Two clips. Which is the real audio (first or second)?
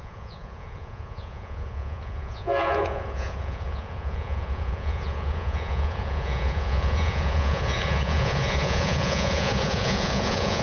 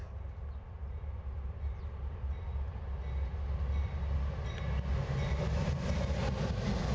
second